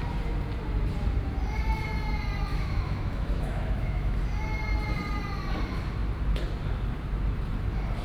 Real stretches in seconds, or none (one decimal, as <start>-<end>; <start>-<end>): 0.0-2.5; 4.2-8.0